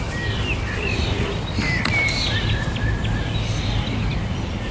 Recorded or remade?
recorded